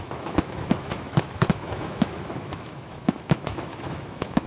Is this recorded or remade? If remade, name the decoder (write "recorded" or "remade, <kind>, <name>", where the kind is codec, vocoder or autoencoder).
remade, autoencoder, DAC-VAE